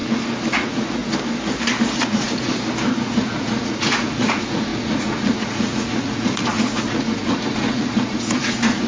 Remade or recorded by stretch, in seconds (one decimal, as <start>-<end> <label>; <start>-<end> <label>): 0.0-0.5 recorded; 0.5-1.0 remade; 1.0-2.0 recorded; 2.0-2.5 remade; 2.5-3.0 recorded; 3.0-8.9 remade